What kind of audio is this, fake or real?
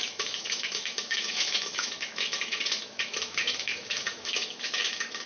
fake